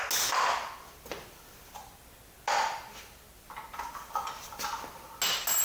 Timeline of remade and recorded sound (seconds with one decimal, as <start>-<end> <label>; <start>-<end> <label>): 0.0-5.6 recorded